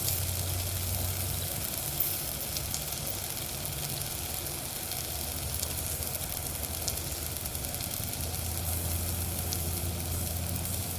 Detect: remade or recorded recorded